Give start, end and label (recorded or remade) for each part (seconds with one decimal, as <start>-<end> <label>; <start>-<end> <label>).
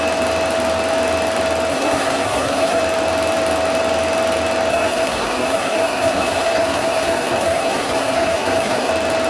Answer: 0.0-1.7 recorded; 1.7-2.8 remade; 2.8-4.7 recorded; 4.7-8.9 remade; 8.9-9.3 recorded